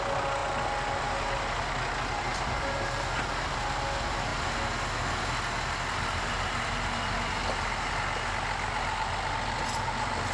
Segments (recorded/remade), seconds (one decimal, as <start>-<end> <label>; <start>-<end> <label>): 0.0-10.3 recorded